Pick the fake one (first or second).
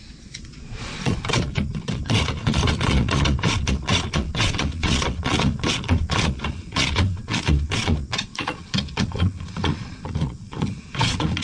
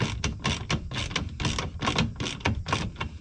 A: first